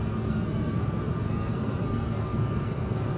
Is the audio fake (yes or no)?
yes